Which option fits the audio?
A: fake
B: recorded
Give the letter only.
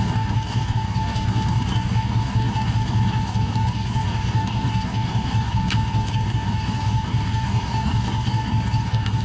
A